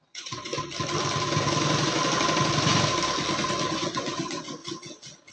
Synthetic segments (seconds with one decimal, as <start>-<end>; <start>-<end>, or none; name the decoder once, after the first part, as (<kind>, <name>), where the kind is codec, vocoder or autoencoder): 0.0-0.5 (vocoder, WaveNeXt); 3.7-4.6